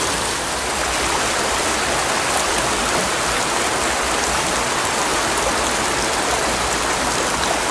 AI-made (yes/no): no